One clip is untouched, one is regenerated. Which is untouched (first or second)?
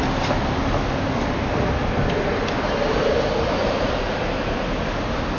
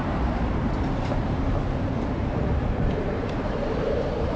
first